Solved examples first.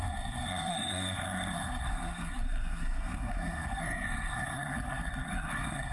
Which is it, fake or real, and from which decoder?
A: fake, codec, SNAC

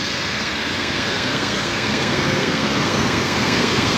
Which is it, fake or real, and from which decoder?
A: fake, codec, SNAC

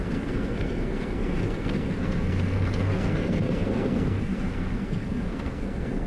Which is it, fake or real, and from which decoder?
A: fake, codec, SNAC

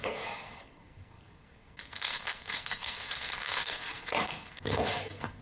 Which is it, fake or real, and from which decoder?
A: fake, codec, SNAC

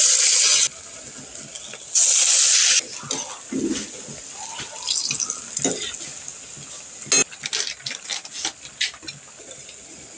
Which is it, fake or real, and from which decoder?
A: real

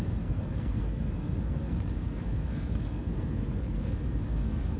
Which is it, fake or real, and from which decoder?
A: fake, codec, SNAC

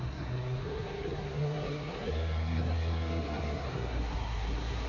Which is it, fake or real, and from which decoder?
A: fake, codec, SNAC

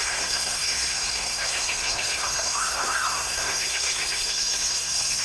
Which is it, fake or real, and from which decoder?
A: fake, codec, SNAC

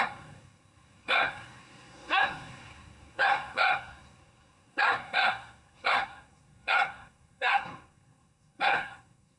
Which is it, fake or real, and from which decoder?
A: fake, codec, SNAC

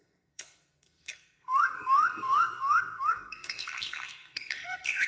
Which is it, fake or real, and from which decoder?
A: fake, codec, SNAC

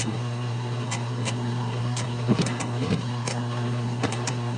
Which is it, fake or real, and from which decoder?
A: fake, codec, SNAC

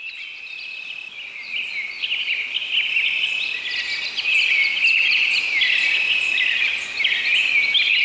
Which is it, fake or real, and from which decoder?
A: real